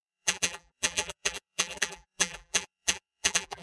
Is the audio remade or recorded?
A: remade